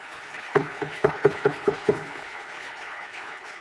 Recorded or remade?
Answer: remade